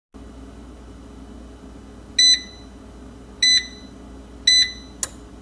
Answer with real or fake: real